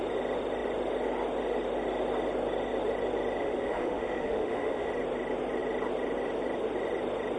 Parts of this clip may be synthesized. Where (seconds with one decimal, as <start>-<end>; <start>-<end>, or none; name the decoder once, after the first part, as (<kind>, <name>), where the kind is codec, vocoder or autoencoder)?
3.4-4.9 (autoencoder, DAC-VAE)